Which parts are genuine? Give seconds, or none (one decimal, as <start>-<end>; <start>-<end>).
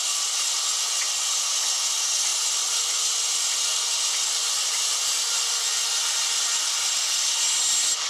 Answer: 0.0-8.1